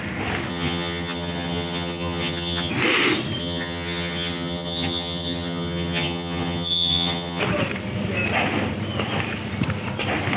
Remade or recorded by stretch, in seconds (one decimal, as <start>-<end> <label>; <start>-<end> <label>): 0.0-0.5 recorded; 0.5-2.7 remade; 2.7-3.4 recorded; 3.4-7.4 remade; 7.4-10.4 recorded

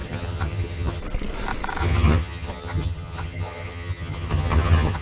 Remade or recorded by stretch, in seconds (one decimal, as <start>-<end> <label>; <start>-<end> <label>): 0.0-1.0 remade; 1.0-1.8 recorded; 1.8-5.0 remade